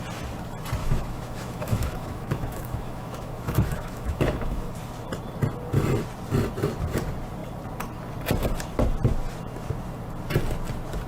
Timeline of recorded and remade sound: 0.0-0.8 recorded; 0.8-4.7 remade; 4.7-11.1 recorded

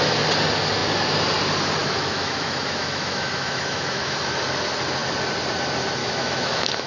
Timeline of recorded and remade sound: 0.0-1.8 recorded; 1.8-4.2 remade; 4.2-6.0 recorded; 6.0-6.9 remade